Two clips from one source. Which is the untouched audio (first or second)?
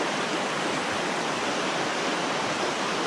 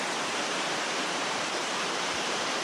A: first